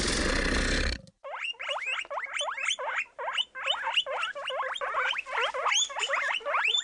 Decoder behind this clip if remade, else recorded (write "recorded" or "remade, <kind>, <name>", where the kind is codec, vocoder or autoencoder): recorded